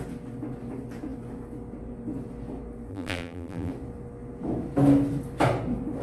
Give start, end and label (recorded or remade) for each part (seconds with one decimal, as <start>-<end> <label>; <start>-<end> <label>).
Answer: 0.0-2.9 recorded; 2.9-3.7 remade; 3.7-6.0 recorded